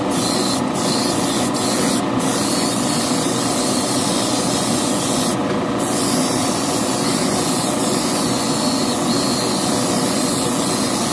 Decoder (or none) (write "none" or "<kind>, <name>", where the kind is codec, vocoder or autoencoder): vocoder, Vocos